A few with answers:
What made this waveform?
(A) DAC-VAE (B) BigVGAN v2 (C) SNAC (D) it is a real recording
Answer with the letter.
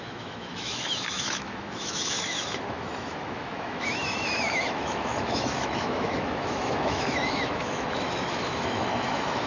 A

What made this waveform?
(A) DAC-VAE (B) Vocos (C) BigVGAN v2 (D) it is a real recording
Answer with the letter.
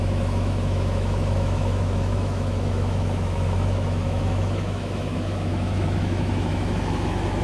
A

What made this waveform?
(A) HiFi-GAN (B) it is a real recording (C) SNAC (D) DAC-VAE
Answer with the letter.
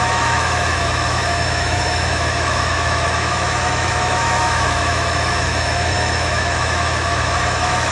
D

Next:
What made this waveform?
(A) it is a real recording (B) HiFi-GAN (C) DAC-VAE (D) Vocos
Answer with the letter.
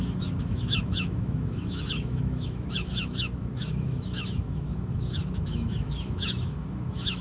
C